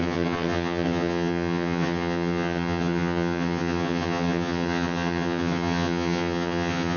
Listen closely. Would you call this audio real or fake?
fake